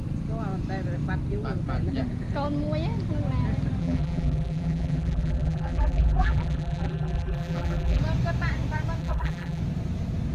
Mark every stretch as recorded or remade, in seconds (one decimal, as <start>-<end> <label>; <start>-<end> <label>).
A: 0.0-3.8 recorded; 3.8-8.0 remade; 8.0-9.0 recorded; 9.0-9.6 remade; 9.6-10.3 recorded